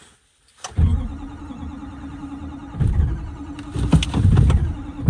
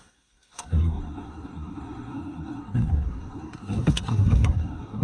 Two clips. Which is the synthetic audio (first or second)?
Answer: second